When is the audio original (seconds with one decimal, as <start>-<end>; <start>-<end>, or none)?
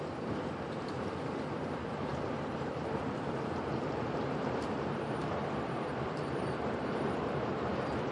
none